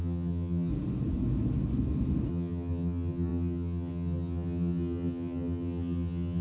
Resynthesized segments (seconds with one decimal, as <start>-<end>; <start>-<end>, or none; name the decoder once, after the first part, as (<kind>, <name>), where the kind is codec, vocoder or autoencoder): 0.0-0.7 (vocoder, HiFi-GAN); 2.3-6.4